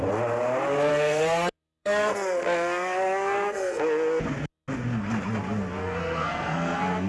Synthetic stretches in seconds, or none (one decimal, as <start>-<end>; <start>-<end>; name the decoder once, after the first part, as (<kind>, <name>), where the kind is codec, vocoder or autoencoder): 0.9-3.8 (codec, SNAC); 5.8-7.1